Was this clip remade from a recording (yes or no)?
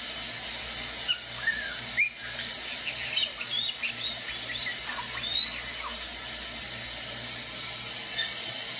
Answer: no